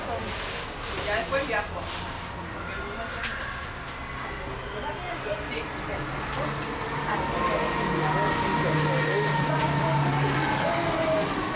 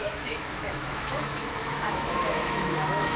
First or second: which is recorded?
first